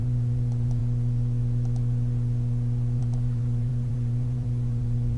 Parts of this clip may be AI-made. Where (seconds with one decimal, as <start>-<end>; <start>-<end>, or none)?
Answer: 0.0-0.8; 3.0-5.2